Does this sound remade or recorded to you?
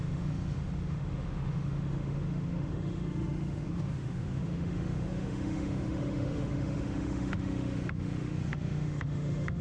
remade